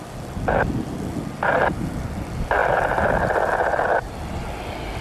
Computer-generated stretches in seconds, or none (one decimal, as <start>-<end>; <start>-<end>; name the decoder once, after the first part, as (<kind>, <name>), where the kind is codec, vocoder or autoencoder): 0.0-5.0 (vocoder, BigVGAN v2)